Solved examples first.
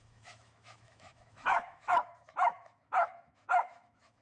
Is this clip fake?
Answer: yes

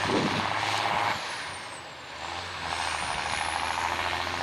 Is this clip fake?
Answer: no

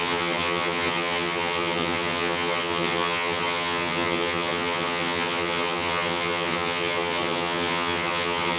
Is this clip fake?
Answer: yes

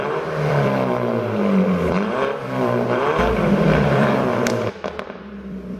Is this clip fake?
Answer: yes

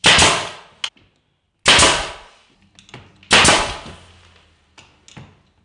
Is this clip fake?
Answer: no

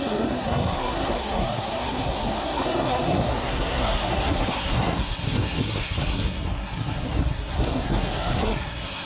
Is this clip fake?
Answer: yes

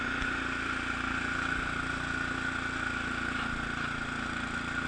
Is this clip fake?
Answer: no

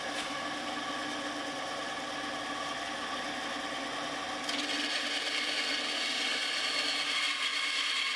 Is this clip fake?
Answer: no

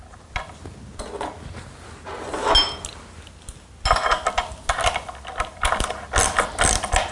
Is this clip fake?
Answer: no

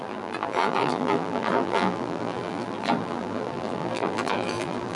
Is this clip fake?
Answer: yes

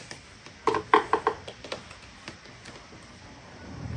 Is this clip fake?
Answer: no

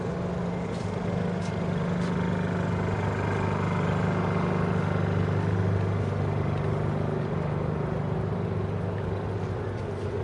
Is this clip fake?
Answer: no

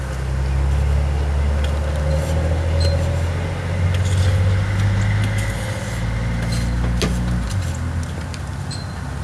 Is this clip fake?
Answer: no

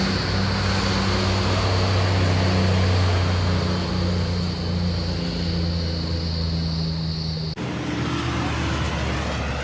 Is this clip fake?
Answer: no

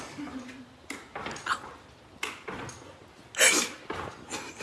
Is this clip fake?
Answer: no